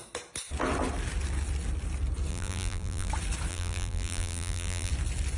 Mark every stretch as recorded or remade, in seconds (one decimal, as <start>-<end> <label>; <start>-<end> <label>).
0.0-2.3 recorded; 2.3-3.1 remade; 3.1-3.5 recorded; 3.5-4.9 remade; 4.9-5.4 recorded